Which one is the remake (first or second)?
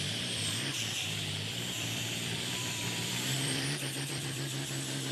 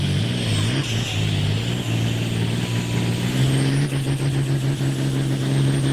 first